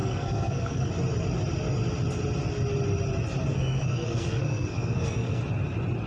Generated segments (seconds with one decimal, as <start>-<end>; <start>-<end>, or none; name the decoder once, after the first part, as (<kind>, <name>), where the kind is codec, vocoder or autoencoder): 0.0-0.9 (codec, SNAC); 3.5-5.4